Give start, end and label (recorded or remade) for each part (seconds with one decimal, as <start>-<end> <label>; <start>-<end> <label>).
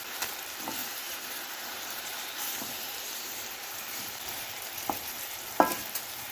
0.0-0.8 recorded; 0.8-4.5 remade; 4.5-6.3 recorded